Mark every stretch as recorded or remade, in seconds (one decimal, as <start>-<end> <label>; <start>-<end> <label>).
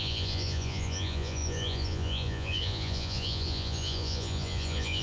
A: 0.0-5.0 remade